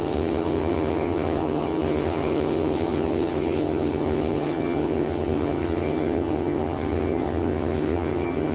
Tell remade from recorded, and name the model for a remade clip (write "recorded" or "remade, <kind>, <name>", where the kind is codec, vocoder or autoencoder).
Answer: remade, vocoder, HiFi-GAN